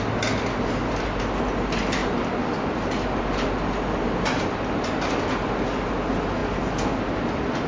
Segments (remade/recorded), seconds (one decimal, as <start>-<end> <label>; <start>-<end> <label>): 0.0-7.7 recorded